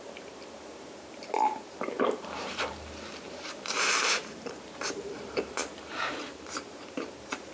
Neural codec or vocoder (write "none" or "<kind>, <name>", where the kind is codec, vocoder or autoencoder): vocoder, BigVGAN v2